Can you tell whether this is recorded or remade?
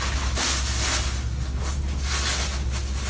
recorded